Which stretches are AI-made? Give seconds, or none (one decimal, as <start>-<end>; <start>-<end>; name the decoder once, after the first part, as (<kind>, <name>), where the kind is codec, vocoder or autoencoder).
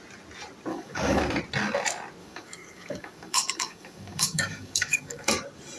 0.7-1.2 (codec, DAC); 2.2-5.3